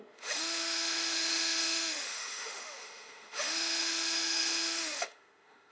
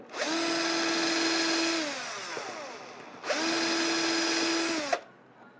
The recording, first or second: second